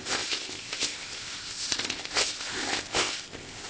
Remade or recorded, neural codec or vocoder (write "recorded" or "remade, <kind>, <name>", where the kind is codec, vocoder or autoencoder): remade, codec, ZipCodec